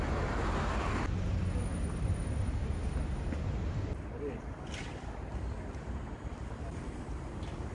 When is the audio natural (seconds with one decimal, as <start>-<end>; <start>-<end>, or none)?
0.0-1.7; 3.3-7.7